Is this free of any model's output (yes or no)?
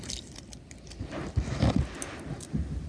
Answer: yes